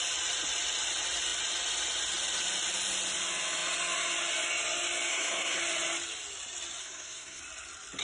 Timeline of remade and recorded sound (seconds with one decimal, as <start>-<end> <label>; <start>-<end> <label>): 0.0-5.1 recorded; 5.1-5.6 remade; 5.6-6.8 recorded; 6.8-7.4 remade; 7.4-8.0 recorded